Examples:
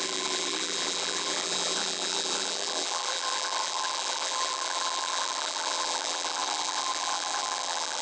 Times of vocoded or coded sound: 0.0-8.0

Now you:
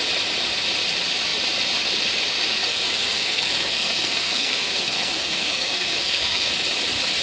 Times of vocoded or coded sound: 2.7-6.5

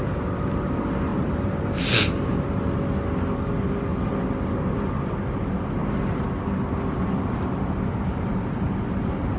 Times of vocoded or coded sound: none

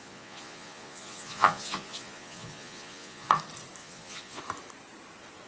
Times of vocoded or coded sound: 0.0-3.3; 3.8-4.4

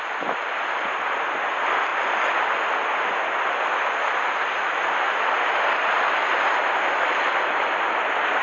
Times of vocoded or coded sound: none

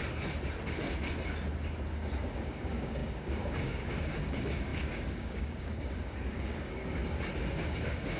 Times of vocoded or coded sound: 2.2-7.0; 7.6-8.2